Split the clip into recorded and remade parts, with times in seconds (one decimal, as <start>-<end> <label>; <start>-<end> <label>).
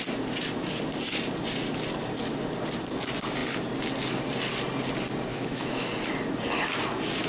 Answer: 0.0-5.3 recorded; 5.3-5.9 remade; 5.9-7.3 recorded